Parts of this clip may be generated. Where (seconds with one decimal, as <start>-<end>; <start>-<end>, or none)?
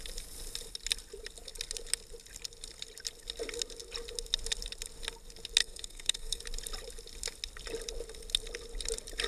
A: 5.6-6.4